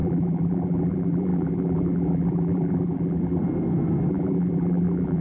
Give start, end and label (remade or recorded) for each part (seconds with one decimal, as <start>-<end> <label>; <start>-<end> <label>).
0.0-3.4 remade; 3.4-4.1 recorded; 4.1-5.2 remade